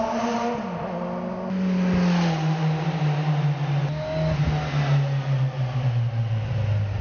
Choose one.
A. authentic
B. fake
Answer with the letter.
A